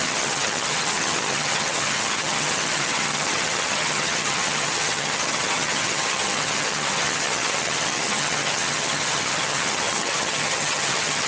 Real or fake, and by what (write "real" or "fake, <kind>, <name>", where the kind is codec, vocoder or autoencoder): fake, vocoder, HiFi-GAN